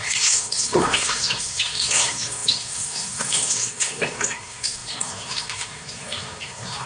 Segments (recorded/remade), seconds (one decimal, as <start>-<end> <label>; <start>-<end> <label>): 0.0-6.9 remade